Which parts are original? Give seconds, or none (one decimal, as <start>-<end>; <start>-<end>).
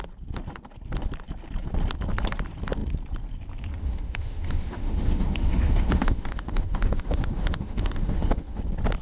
0.0-3.8; 8.6-9.0